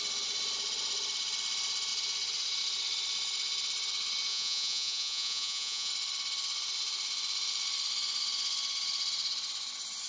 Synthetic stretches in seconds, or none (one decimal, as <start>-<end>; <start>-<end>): 4.3-5.9